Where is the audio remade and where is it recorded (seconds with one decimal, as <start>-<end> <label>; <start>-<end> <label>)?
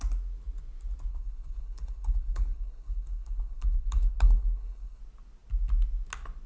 0.0-1.1 recorded; 1.1-5.0 remade; 5.0-6.5 recorded